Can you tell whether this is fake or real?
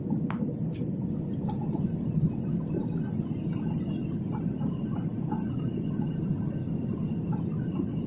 real